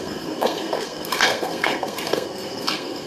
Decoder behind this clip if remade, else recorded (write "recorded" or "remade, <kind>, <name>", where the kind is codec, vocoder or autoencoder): remade, codec, SNAC